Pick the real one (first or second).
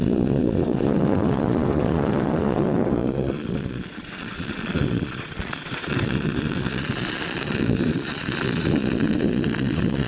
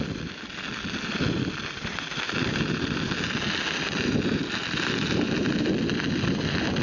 second